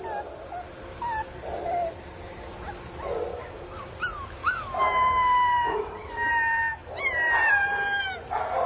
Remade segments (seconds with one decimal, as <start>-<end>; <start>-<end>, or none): 3.3-3.9; 4.4-6.3